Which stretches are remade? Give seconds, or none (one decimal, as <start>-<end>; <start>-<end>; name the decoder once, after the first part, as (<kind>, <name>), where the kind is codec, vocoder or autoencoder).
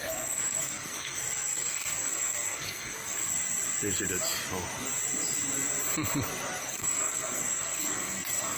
0.0-3.3 (codec, SNAC); 6.6-8.6